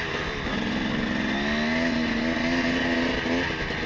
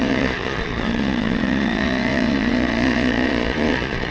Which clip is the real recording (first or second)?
first